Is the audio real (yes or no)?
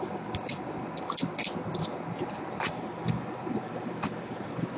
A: no